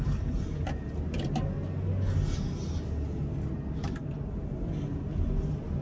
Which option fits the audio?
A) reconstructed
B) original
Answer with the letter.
B